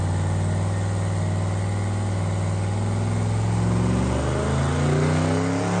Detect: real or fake real